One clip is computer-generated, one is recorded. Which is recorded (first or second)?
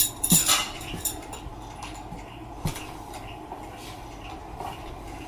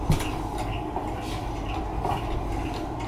second